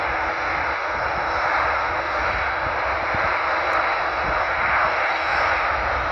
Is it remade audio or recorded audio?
recorded